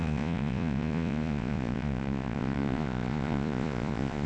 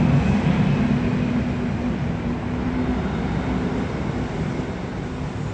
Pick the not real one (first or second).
first